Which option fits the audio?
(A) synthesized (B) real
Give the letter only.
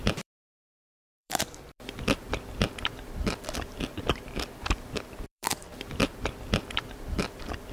A